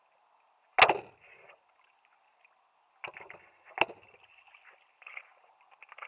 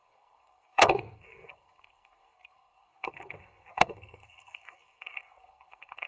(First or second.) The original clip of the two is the first